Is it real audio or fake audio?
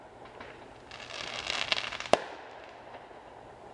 real